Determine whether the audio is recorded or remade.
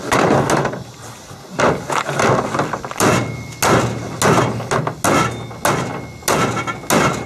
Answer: recorded